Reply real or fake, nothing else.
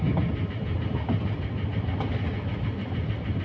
real